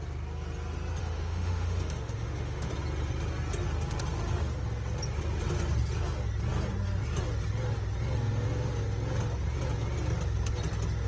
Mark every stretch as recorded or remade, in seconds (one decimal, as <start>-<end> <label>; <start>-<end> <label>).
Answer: 0.0-1.0 recorded; 1.0-2.7 remade; 2.7-11.1 recorded